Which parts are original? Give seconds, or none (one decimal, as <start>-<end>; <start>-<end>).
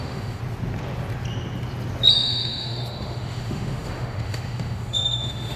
0.4-2.1